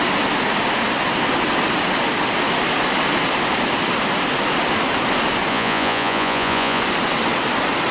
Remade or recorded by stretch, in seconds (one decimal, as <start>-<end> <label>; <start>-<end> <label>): 0.0-5.5 recorded; 5.5-6.8 remade; 6.8-7.9 recorded